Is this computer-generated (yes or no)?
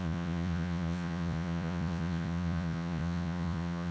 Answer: yes